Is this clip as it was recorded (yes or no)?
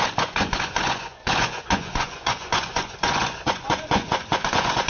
no